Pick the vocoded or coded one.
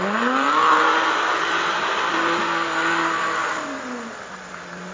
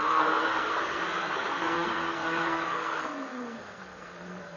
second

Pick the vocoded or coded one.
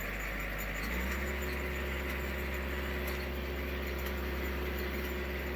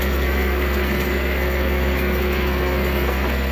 second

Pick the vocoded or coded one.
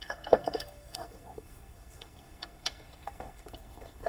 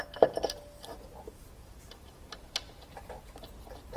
first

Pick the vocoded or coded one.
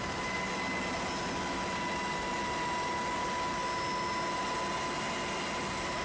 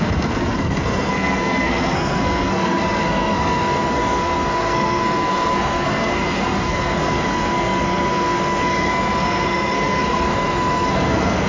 second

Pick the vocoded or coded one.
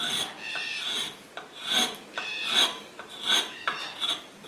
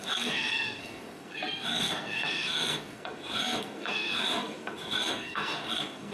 second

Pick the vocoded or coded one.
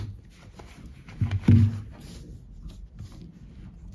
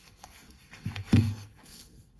second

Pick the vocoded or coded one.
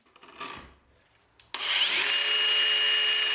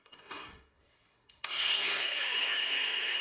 second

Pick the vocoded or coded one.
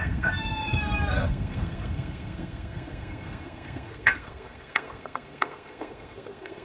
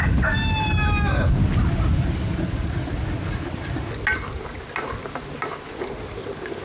first